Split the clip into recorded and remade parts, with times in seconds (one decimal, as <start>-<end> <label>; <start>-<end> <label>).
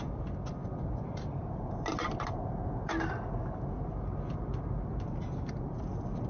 0.0-6.3 recorded